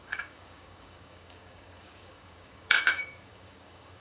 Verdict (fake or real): fake